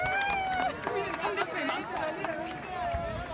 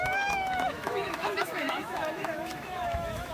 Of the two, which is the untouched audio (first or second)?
first